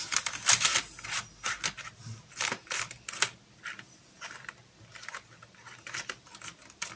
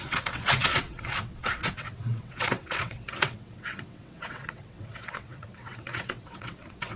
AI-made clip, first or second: second